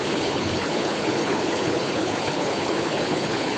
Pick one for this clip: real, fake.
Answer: fake